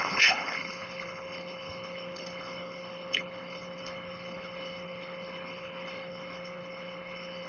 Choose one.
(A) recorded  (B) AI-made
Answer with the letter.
B